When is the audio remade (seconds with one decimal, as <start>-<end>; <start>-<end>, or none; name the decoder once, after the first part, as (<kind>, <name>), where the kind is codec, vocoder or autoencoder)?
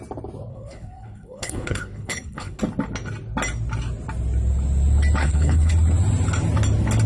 0.5-2.6 (codec, HILCodec); 5.2-5.7